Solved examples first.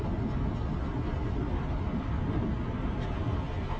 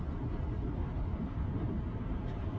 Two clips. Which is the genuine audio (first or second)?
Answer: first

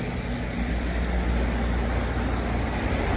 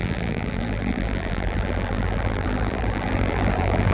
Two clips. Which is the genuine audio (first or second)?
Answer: first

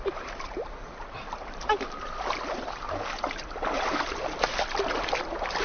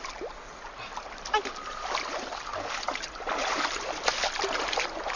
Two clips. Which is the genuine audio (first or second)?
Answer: second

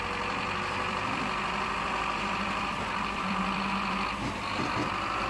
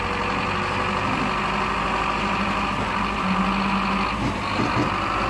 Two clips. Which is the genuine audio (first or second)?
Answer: second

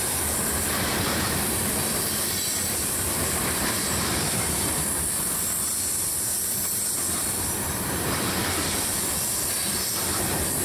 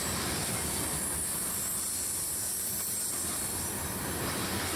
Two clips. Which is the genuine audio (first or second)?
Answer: second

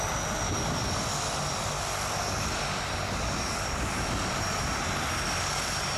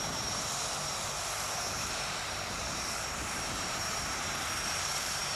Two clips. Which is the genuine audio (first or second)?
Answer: first